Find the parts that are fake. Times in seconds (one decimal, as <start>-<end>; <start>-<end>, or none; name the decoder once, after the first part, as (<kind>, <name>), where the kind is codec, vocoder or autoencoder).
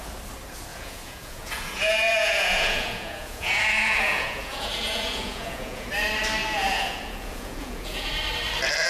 0.7-5.9 (vocoder, Vocos); 6.4-8.1